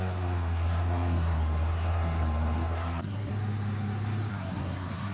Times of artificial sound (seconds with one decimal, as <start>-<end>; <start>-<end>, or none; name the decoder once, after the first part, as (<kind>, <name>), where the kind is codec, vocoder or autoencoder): 0.0-3.3 (codec, SNAC); 4.3-5.1